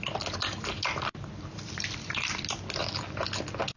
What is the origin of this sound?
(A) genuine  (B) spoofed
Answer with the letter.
A